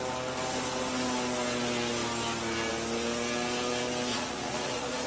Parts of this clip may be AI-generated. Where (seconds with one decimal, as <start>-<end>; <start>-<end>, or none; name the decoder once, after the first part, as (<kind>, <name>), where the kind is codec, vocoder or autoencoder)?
4.1-5.1 (vocoder, Vocos)